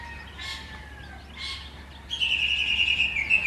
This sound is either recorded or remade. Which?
recorded